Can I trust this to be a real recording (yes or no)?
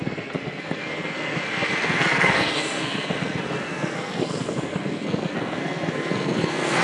no